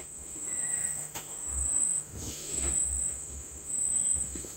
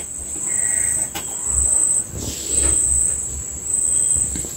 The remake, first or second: first